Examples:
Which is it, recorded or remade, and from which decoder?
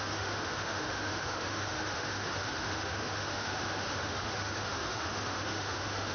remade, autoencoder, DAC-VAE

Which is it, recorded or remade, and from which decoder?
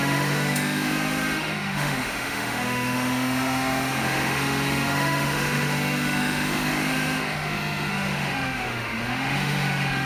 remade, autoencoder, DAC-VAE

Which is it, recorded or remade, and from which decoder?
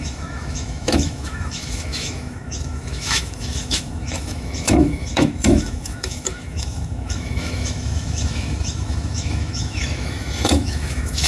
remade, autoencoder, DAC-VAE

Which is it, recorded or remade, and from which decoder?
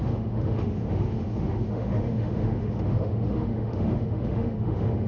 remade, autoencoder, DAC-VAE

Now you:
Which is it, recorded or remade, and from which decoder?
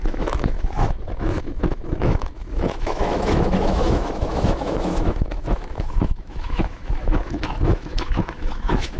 remade, autoencoder, DAC-VAE